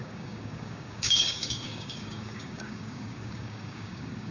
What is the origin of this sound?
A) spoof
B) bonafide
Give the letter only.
A